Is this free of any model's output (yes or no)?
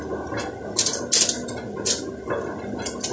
yes